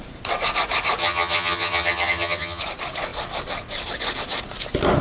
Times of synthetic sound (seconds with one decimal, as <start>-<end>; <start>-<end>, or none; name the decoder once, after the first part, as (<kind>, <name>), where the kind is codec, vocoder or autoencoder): 1.0-2.6 (vocoder, HiFi-GAN)